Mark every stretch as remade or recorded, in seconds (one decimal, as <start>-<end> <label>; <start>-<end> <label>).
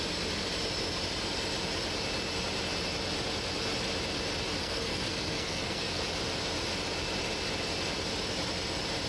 0.0-4.6 recorded; 4.6-6.0 remade; 6.0-9.1 recorded